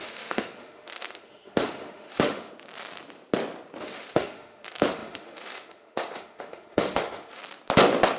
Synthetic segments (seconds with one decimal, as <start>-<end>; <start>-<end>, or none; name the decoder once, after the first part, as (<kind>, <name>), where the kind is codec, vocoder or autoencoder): 0.0-2.5 (autoencoder, DAC-VAE); 3.8-7.4